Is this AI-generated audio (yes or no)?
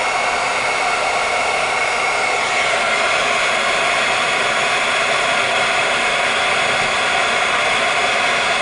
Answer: no